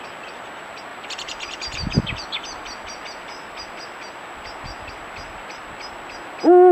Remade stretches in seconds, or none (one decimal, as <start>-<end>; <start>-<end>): none